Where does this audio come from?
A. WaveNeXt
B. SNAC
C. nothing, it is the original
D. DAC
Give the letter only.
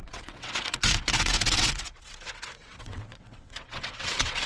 A